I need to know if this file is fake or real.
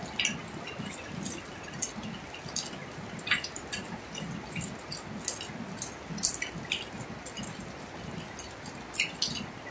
real